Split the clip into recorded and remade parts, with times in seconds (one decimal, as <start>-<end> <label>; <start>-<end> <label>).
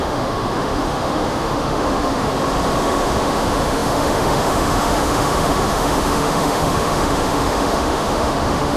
0.0-2.3 remade; 2.3-2.8 recorded; 2.8-8.8 remade